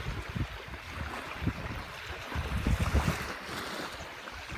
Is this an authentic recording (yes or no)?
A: yes